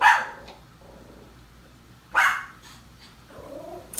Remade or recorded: remade